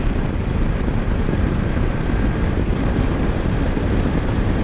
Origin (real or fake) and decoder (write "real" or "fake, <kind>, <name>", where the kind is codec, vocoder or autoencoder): fake, vocoder, BigVGAN v2